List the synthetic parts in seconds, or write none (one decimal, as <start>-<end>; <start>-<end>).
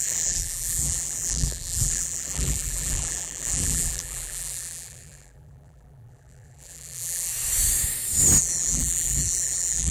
0.0-7.3; 8.4-9.9